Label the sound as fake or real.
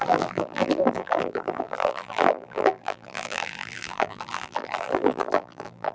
fake